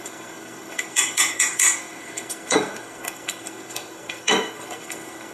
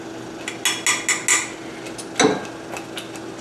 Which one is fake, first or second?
first